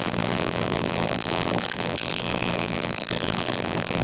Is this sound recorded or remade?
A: remade